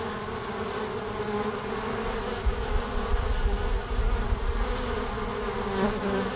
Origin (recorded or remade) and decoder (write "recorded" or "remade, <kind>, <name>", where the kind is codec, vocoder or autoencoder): recorded